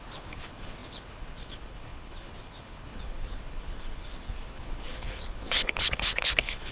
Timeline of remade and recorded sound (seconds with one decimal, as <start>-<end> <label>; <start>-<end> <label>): 0.0-6.7 remade